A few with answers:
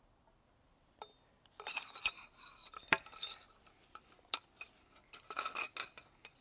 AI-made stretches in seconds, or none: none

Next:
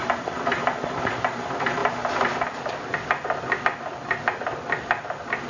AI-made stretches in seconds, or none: none

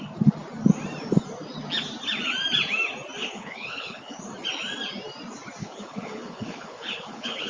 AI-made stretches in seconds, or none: 3.2-4.2; 5.6-7.5

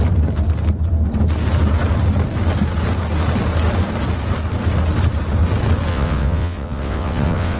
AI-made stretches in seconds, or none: 5.9-7.6

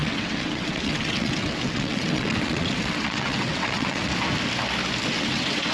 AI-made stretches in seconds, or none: 0.0-4.1; 5.1-5.7

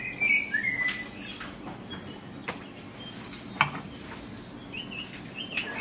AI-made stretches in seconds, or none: none